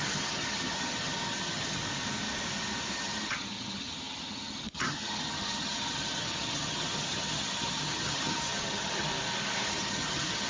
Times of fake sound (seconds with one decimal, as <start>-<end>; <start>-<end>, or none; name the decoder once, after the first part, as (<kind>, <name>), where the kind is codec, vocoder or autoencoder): 0.0-1.8 (vocoder, HiFi-GAN); 2.9-9.1; 9.7-10.5